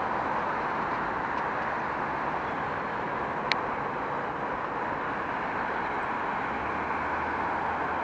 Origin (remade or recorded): recorded